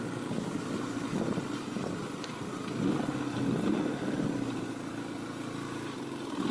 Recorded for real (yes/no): yes